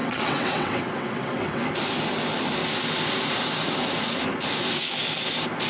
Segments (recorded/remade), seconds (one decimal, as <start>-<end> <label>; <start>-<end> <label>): 0.0-1.6 remade; 1.6-5.7 recorded